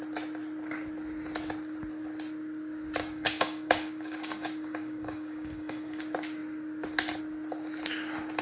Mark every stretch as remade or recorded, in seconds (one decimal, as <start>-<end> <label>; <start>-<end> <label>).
0.0-3.0 recorded; 3.0-6.0 remade; 6.0-8.4 recorded